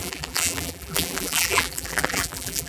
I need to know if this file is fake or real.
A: fake